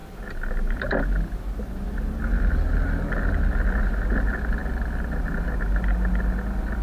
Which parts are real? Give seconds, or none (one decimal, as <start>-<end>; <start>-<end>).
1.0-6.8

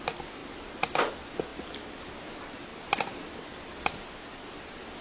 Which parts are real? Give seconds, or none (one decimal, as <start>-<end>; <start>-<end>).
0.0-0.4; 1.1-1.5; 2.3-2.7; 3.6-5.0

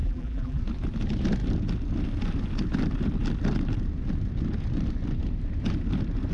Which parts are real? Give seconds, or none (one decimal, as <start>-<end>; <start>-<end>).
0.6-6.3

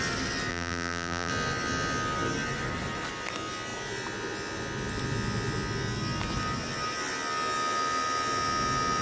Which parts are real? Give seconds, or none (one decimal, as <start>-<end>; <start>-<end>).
0.0-0.5; 1.3-9.0

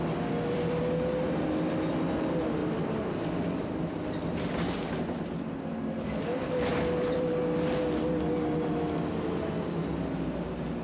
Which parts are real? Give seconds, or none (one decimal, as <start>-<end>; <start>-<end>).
0.8-2.6; 6.2-6.7; 7.3-10.8

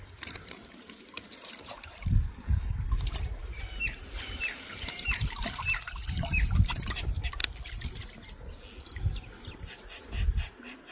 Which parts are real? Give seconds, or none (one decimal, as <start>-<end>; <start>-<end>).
7.4-9.6

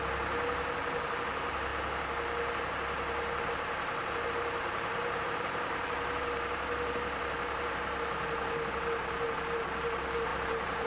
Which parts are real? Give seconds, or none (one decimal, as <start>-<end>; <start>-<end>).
0.0-4.6; 8.5-10.3

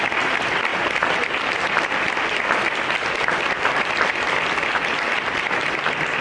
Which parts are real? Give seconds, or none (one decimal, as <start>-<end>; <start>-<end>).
0.0-0.7; 4.4-6.2